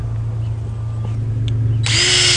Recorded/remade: recorded